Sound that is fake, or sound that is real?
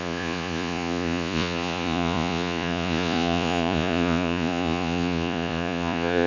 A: fake